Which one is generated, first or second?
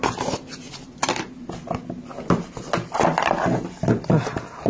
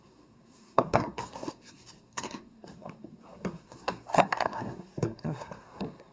second